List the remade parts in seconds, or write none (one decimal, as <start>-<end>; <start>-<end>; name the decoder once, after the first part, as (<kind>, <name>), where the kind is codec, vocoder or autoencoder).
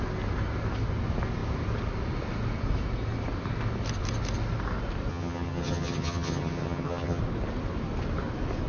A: 5.1-7.2 (vocoder, HiFi-GAN)